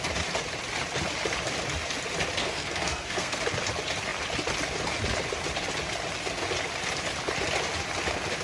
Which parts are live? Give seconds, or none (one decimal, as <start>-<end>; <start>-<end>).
0.0-2.4; 3.4-8.4